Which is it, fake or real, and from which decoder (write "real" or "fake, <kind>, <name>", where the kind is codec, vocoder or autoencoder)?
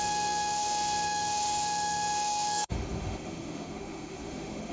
fake, autoencoder, DAC-VAE